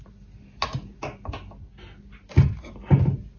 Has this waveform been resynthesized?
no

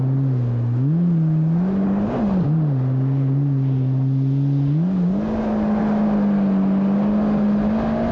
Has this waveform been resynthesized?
no